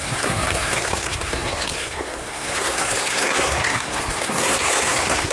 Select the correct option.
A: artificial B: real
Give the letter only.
A